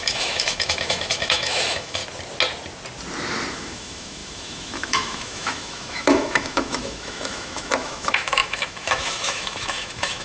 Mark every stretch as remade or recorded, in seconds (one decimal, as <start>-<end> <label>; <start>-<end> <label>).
0.0-2.0 remade; 2.0-3.5 recorded; 3.5-10.2 remade